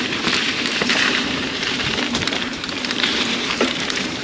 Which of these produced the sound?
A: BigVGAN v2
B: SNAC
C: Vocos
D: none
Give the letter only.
A